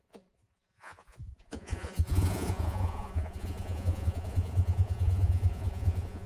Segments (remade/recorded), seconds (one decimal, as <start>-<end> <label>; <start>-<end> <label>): 0.0-6.3 remade